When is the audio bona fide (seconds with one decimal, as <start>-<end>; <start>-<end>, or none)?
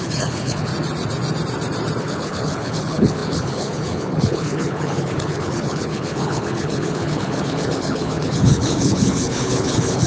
0.7-2.0